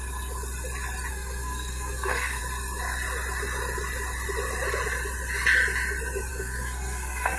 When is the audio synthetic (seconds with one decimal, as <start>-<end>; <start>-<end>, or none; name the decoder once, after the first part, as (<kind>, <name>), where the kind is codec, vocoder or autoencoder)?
1.1-2.4 (codec, SNAC); 6.3-7.4